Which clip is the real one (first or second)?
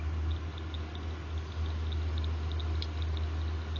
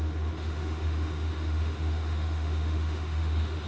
first